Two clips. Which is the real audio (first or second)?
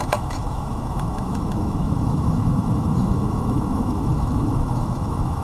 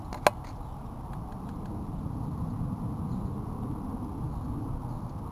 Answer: second